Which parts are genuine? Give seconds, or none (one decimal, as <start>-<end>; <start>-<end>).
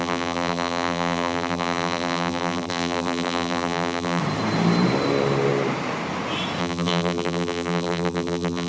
4.2-6.6